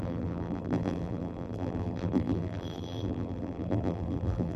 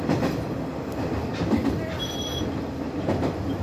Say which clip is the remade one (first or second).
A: first